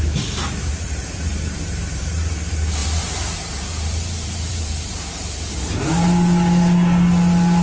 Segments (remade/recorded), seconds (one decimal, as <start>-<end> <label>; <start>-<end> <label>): 0.0-0.7 recorded; 0.7-2.3 remade; 2.3-2.8 recorded; 2.8-5.9 remade; 5.9-7.6 recorded